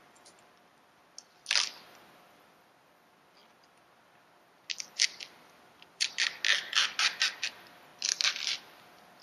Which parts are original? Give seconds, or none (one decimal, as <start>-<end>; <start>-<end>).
0.0-9.2